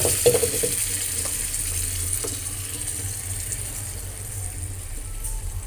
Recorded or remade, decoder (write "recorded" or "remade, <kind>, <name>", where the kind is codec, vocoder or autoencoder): recorded